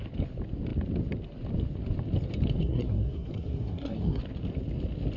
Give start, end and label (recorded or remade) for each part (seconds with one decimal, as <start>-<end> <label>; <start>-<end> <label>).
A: 0.0-2.6 recorded; 2.6-4.2 remade; 4.2-5.2 recorded